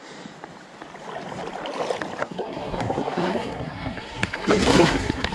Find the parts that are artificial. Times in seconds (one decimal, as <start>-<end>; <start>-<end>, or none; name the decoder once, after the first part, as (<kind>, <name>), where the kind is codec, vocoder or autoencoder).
2.2-5.3 (codec, SNAC)